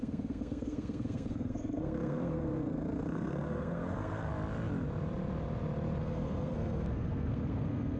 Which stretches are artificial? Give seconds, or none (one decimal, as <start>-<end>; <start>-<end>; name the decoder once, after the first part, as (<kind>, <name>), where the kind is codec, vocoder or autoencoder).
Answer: 0.0-4.3 (codec, SNAC); 6.0-8.0